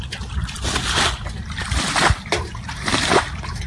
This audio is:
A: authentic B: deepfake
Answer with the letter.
A